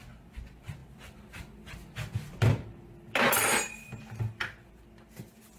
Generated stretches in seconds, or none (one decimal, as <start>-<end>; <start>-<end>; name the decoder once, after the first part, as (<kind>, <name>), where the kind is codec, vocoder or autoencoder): none